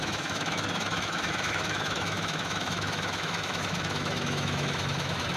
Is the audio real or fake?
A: fake